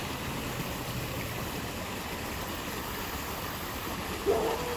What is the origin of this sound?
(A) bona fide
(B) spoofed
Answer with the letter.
A